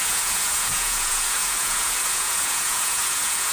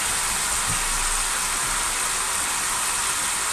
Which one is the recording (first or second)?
second